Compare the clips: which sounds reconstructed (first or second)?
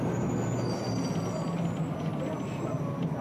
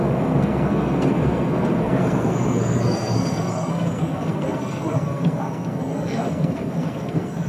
second